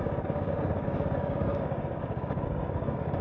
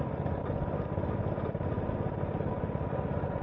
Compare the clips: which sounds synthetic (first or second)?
first